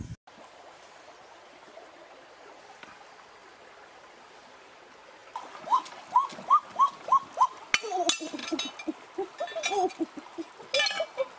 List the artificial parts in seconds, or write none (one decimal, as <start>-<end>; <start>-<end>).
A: none